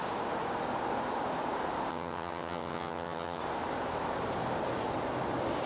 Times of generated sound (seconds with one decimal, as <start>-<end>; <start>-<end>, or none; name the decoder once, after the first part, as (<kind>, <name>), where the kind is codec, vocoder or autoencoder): 1.9-3.4 (vocoder, HiFi-GAN)